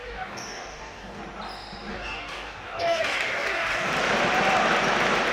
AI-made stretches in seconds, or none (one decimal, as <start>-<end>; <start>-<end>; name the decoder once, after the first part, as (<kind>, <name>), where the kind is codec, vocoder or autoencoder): 0.0-1.2 (codec, DAC); 1.9-3.9